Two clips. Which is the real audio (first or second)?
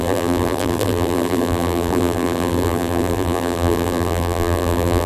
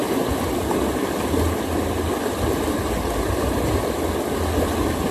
second